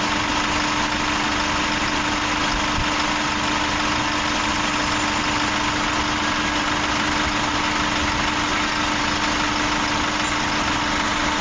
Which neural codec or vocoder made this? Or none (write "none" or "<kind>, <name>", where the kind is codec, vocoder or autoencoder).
none